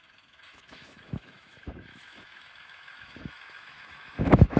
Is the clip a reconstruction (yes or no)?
yes